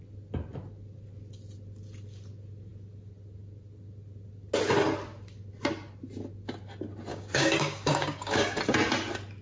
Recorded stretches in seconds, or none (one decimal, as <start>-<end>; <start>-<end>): 0.0-7.1; 8.6-9.4